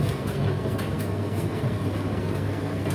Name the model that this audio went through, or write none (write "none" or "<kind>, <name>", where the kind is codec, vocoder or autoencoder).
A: codec, SNAC